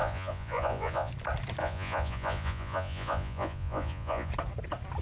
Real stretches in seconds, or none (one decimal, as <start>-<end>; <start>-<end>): 1.1-1.6; 4.3-5.0